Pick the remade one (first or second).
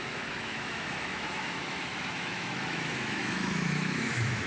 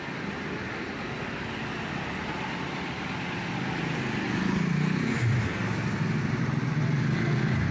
first